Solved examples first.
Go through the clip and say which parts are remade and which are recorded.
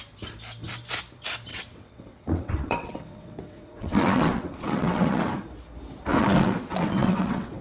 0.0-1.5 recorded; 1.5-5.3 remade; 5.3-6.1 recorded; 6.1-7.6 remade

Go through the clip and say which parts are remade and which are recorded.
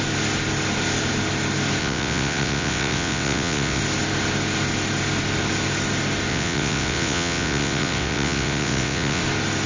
0.0-1.8 recorded; 1.8-3.8 remade; 3.8-6.3 recorded; 6.3-9.2 remade; 9.2-9.7 recorded